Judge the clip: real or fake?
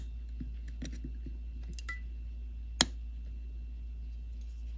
real